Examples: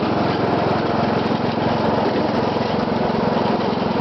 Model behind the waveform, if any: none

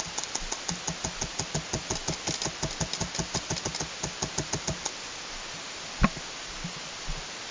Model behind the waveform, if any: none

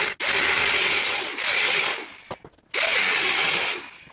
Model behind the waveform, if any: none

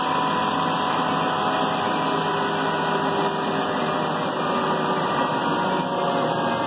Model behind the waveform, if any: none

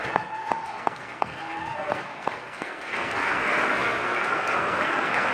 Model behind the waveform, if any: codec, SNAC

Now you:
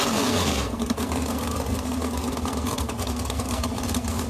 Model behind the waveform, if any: codec, SNAC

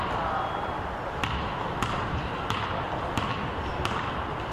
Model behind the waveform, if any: none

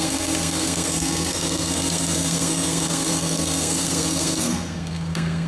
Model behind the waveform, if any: codec, SNAC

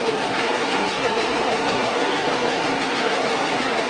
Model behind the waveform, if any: codec, SNAC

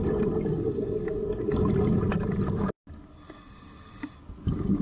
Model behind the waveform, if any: none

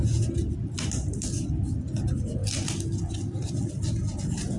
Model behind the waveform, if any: none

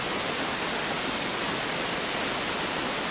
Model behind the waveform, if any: none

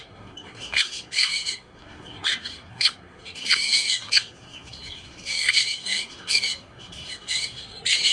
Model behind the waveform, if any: codec, SNAC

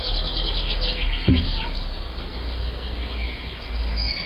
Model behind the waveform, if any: codec, SNAC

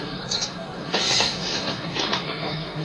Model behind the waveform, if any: codec, SNAC